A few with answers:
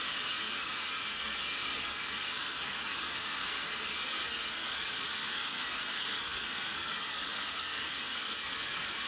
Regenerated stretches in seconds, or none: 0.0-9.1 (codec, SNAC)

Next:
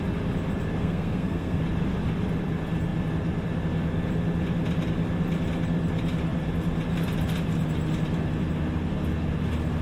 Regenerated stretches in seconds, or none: 0.8-1.6 (codec, SNAC)